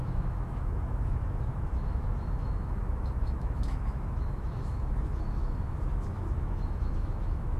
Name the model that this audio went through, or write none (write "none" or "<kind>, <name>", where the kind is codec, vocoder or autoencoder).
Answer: autoencoder, DAC-VAE